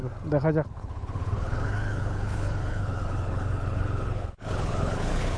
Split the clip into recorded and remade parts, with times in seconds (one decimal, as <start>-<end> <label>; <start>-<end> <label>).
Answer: 0.0-0.7 recorded; 0.7-5.4 remade